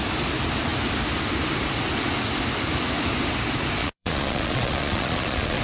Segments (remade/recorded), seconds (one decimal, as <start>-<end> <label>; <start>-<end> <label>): 0.0-3.8 recorded; 3.8-5.6 remade